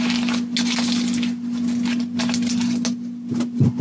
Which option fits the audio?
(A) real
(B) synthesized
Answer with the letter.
A